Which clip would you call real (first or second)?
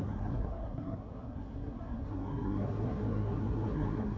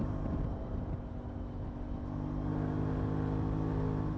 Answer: second